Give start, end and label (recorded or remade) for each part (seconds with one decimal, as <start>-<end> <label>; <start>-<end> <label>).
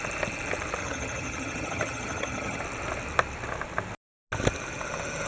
0.0-0.8 recorded; 0.8-2.6 remade; 2.6-5.3 recorded